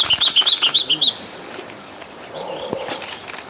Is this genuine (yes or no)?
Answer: yes